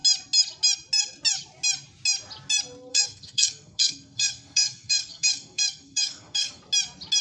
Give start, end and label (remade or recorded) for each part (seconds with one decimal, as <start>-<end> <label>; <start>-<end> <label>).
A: 0.0-2.9 recorded; 2.9-6.6 remade; 6.6-7.2 recorded